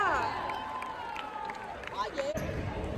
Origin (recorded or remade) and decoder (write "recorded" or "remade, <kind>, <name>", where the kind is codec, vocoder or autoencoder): recorded